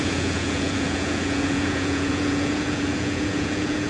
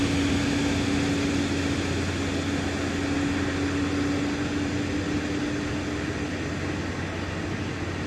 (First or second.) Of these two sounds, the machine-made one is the first